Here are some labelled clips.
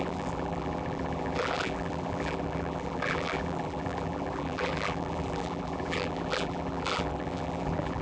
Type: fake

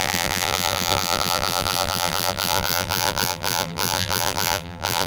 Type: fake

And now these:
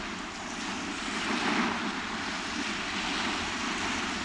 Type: real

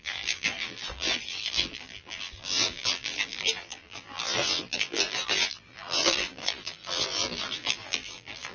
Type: fake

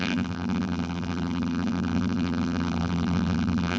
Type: fake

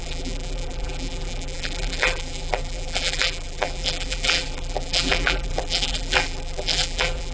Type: fake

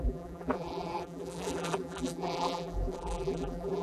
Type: fake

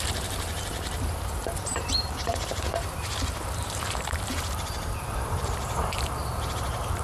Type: fake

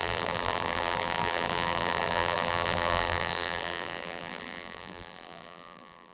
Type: fake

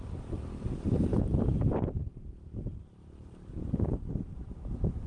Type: fake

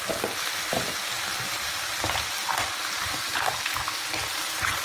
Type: real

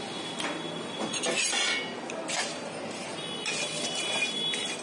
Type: real